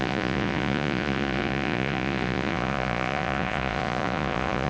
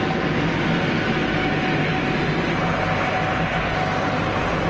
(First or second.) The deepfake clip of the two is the first